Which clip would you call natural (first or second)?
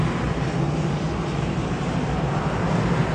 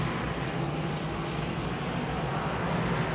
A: second